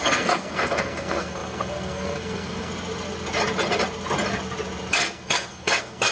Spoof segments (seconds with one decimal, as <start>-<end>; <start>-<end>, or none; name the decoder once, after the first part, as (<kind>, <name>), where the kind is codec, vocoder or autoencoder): 0.0-2.7 (codec, SNAC); 4.9-6.1